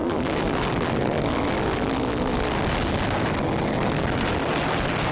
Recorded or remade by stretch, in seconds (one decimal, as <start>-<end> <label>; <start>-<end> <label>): 0.0-5.1 recorded